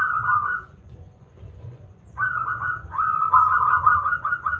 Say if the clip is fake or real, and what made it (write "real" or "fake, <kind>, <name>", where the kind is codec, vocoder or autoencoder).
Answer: fake, vocoder, Vocos